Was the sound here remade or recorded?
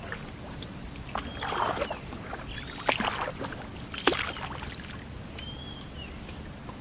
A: recorded